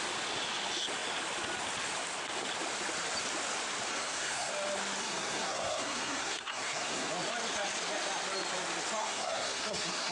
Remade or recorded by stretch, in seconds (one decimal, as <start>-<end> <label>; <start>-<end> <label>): 0.0-3.9 recorded; 3.9-4.5 remade; 4.5-5.0 recorded; 5.0-7.1 remade; 7.1-9.0 recorded; 9.0-10.1 remade